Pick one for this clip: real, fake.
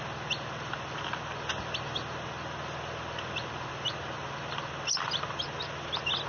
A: real